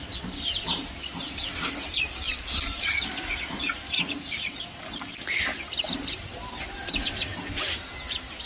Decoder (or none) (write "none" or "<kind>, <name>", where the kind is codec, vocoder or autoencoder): none